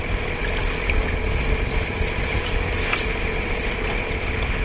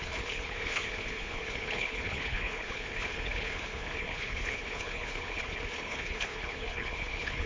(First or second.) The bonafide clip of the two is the first